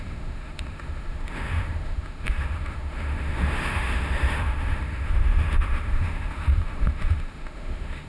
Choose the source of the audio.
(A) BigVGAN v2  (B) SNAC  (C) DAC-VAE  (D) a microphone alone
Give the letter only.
C